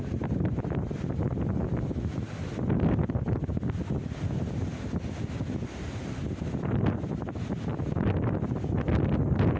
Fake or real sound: real